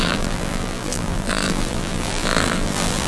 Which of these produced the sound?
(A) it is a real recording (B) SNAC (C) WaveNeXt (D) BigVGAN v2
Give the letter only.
D